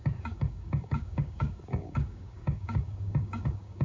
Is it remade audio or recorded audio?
remade